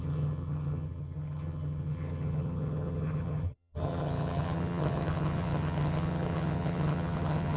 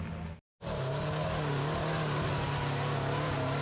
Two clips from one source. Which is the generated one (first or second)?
first